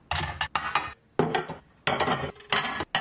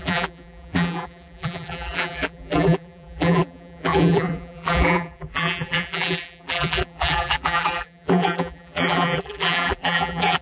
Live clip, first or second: first